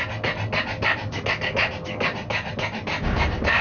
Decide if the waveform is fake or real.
real